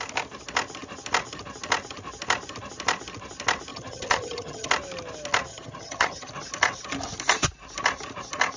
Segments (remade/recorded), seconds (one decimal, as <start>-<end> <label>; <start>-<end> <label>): 0.0-3.7 recorded; 3.7-4.7 remade; 4.7-5.5 recorded; 5.5-6.3 remade; 6.3-8.6 recorded